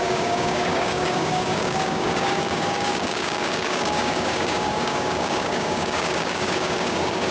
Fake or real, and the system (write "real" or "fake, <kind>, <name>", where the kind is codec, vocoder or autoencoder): fake, codec, DAC